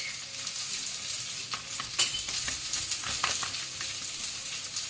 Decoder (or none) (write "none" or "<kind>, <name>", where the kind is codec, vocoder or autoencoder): none